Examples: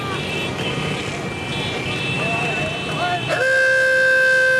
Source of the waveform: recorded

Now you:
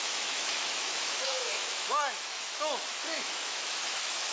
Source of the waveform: remade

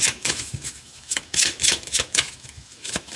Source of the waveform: remade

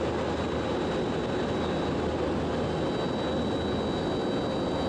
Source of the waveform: recorded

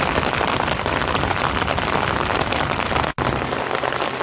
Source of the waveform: recorded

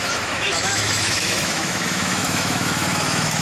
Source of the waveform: remade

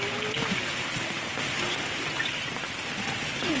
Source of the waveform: recorded